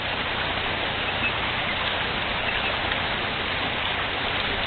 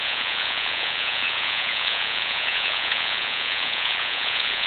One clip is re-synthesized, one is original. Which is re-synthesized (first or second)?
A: second